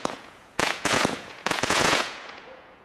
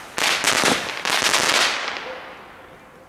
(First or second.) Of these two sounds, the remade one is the first